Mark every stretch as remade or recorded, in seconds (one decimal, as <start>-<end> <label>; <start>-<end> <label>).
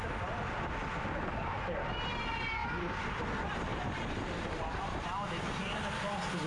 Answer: 0.0-2.6 recorded; 2.6-3.2 remade; 3.2-3.7 recorded; 3.7-5.4 remade; 5.4-6.5 recorded